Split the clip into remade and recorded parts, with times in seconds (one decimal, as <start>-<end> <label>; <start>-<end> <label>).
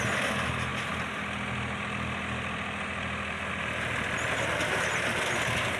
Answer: 0.0-5.8 recorded